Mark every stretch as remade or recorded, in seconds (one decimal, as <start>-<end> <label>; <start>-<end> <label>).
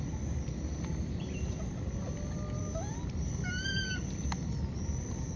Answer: 0.0-2.6 recorded; 2.6-3.3 remade; 3.3-5.4 recorded